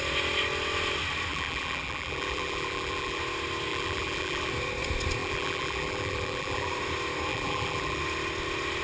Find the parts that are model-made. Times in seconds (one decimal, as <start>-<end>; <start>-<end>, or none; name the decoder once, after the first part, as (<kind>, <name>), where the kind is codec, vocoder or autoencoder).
1.3-3.2 (vocoder, BigVGAN v2); 3.7-4.5; 5.2-6.7; 7.3-8.0